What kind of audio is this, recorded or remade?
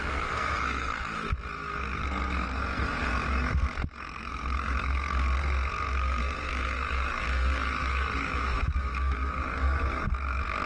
remade